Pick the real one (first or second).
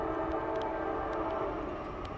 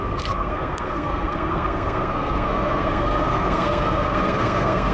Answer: first